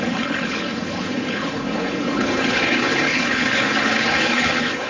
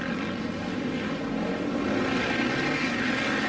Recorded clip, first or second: second